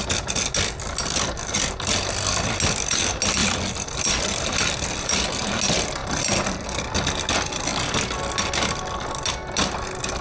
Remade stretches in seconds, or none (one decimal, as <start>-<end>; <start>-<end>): 3.4-5.3; 6.0-6.8